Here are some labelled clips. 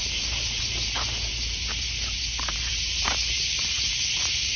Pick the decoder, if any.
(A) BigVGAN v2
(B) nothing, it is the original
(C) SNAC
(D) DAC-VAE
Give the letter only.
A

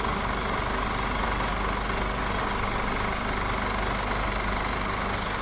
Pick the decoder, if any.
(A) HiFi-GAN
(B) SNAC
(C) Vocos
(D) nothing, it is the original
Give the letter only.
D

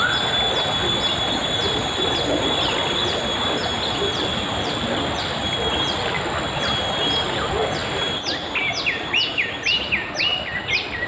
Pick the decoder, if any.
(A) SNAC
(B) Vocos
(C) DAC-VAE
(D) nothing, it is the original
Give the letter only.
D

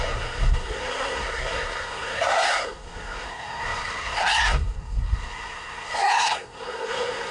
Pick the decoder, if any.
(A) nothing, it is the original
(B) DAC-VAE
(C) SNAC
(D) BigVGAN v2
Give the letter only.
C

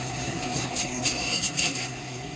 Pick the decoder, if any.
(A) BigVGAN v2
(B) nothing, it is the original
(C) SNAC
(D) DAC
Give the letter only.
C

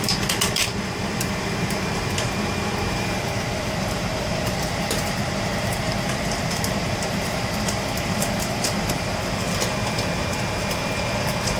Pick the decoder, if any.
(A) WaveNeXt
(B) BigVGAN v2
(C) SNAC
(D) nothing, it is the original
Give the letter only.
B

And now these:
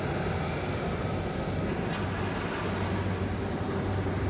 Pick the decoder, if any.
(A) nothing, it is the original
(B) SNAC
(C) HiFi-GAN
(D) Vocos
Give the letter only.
A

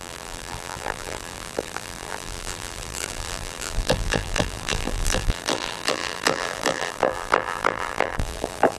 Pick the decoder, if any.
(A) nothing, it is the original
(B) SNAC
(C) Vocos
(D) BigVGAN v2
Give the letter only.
D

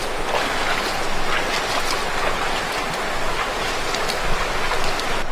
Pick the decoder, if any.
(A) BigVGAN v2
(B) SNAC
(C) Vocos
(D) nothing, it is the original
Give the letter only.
D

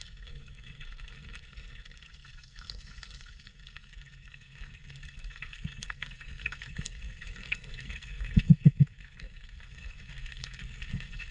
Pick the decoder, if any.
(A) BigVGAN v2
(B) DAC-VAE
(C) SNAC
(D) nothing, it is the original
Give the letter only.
C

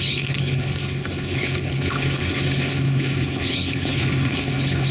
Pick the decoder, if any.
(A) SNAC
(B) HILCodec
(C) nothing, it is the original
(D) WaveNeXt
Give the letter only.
B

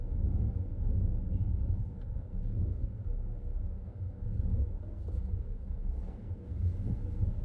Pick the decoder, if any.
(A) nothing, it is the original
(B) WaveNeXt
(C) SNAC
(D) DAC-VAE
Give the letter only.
C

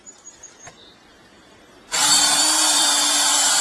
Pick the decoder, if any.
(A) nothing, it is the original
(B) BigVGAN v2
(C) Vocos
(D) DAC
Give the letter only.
B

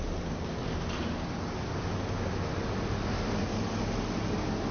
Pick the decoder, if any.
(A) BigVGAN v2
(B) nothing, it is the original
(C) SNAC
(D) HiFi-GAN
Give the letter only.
B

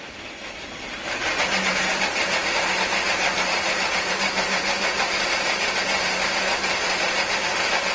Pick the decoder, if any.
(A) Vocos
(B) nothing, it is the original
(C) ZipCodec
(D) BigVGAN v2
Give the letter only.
D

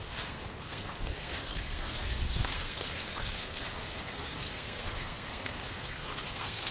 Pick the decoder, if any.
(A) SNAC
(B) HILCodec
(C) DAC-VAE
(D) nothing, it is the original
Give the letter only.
A